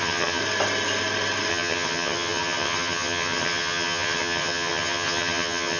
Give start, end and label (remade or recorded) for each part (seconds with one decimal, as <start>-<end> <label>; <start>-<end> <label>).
0.0-0.4 remade; 0.4-1.5 recorded; 1.5-5.8 remade